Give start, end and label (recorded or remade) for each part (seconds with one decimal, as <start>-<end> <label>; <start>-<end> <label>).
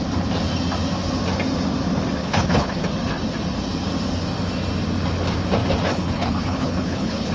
0.0-2.2 recorded; 2.2-2.8 remade; 2.8-5.9 recorded; 5.9-7.3 remade